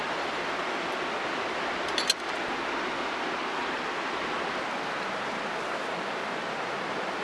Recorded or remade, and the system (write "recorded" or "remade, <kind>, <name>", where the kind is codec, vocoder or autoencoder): recorded